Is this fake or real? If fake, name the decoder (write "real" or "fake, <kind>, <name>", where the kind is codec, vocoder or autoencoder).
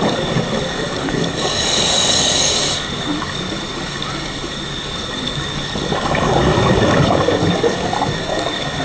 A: fake, codec, DAC